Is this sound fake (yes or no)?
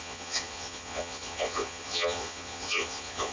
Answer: yes